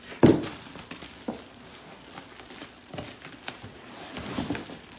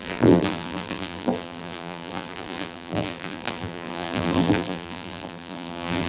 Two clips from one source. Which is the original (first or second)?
first